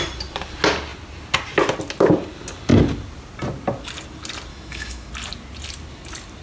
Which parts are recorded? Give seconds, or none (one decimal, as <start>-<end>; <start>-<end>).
0.0-4.5; 5.1-6.4